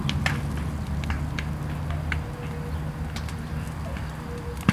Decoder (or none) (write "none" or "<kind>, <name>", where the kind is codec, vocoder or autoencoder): none